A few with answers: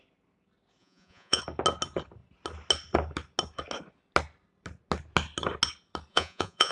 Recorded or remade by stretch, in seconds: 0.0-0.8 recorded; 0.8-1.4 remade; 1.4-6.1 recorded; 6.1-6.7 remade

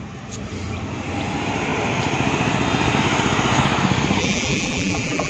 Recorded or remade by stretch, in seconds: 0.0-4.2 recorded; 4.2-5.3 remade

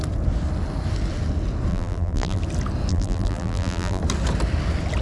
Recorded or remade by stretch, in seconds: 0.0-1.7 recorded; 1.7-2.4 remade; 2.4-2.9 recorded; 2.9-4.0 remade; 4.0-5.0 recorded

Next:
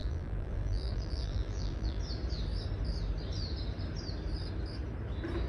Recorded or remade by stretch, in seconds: 0.0-2.0 remade; 2.0-5.5 recorded

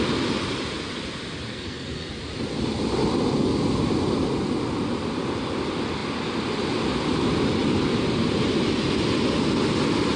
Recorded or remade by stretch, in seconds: 0.0-1.5 recorded; 1.5-2.1 remade; 2.1-10.2 recorded

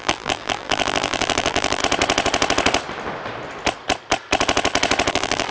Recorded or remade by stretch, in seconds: 0.0-1.8 remade; 1.8-5.1 recorded; 5.1-5.5 remade

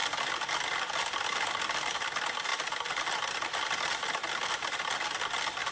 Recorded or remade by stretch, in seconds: 0.0-5.7 recorded